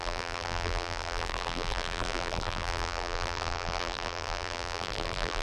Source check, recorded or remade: remade